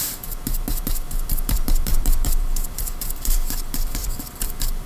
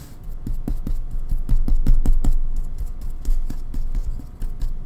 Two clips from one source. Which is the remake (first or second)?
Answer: first